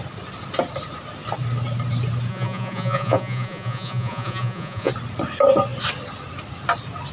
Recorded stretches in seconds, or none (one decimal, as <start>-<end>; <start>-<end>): 0.0-2.3; 4.9-7.1